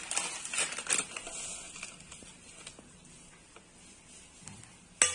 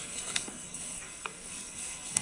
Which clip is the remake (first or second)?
second